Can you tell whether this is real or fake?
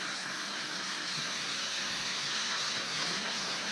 fake